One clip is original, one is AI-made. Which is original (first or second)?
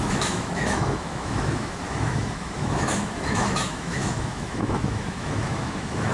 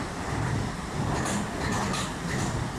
second